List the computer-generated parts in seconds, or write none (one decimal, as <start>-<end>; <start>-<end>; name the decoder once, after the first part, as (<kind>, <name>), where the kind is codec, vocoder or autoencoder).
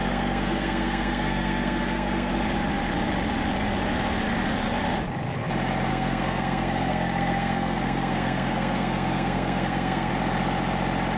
0.0-2.3 (codec, SNAC); 5.9-10.1